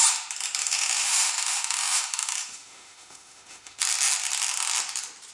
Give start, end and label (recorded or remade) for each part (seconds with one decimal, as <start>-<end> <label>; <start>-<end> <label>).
0.0-0.6 recorded; 0.6-3.8 remade; 3.8-5.3 recorded